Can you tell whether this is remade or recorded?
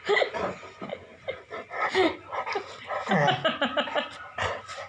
recorded